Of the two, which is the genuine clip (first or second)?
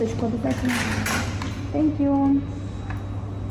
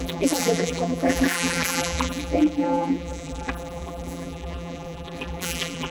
first